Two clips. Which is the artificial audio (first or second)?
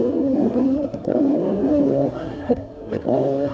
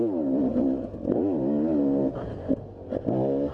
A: first